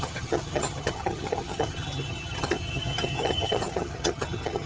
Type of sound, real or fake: fake